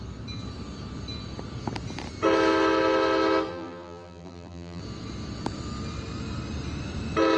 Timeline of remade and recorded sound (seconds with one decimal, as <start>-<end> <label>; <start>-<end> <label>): 0.0-3.5 recorded; 3.5-4.8 remade; 4.8-7.4 recorded